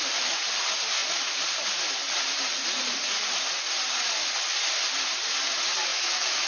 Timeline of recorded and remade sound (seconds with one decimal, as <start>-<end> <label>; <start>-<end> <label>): 0.0-5.9 recorded; 5.9-6.5 remade